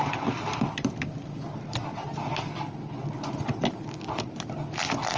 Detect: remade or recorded recorded